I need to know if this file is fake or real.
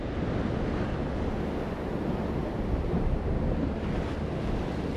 real